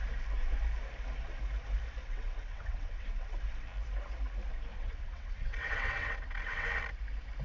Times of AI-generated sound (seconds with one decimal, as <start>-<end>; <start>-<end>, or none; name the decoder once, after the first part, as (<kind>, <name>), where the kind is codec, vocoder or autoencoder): 2.0-3.4 (vocoder, WaveNeXt); 4.7-6.7